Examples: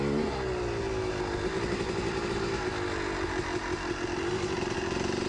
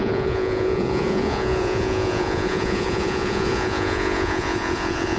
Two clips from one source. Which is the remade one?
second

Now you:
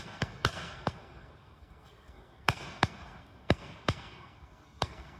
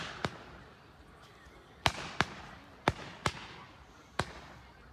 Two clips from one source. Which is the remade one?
first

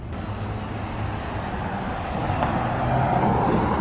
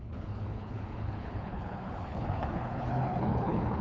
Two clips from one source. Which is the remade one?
second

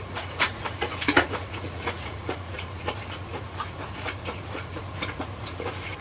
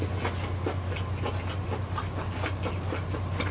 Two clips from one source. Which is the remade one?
first